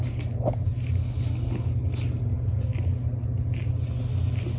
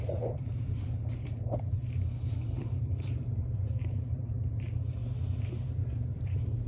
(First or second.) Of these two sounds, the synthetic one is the second